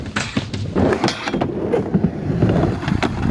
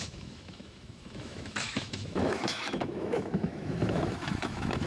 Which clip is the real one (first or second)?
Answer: first